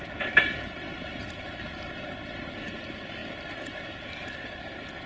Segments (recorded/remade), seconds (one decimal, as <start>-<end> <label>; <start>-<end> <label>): 0.0-5.1 recorded